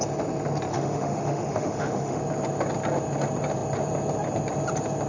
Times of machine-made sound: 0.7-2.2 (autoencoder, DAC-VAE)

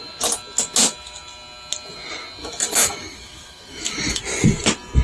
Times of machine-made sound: 2.4-4.2 (autoencoder, DAC-VAE)

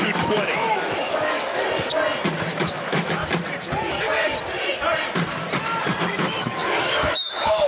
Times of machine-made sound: 0.0-1.6 (autoencoder, DAC-VAE); 2.4-3.2; 6.0-7.7

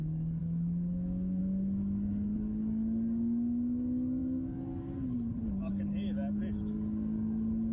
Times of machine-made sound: 0.4-1.4 (autoencoder, DAC-VAE)

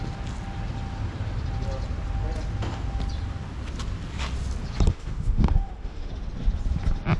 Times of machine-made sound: 4.9-6.1 (autoencoder, DAC-VAE)

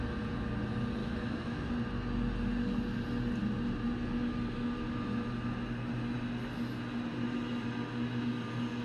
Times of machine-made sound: 1.0-1.7 (autoencoder, DAC-VAE)

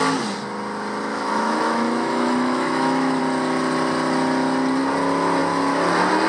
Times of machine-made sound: 1.1-3.2 (autoencoder, DAC-VAE)